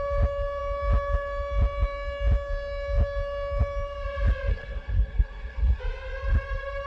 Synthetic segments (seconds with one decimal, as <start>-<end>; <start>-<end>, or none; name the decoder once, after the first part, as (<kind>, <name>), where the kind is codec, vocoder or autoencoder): 4.5-5.8 (codec, SNAC)

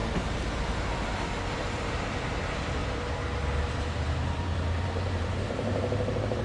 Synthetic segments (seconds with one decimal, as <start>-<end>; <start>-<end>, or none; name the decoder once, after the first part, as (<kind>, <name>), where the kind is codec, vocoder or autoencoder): 1.5-2.8 (vocoder, BigVGAN v2); 3.6-6.4